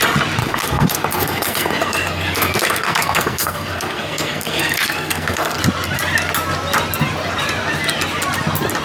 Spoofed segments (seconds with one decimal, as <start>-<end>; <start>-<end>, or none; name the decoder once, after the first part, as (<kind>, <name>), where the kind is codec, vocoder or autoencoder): 0.4-5.6 (codec, SNAC)